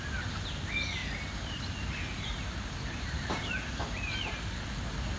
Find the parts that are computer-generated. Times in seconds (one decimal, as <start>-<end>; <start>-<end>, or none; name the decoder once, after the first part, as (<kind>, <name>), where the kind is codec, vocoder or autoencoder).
1.0-1.6 (vocoder, BigVGAN v2); 2.1-3.4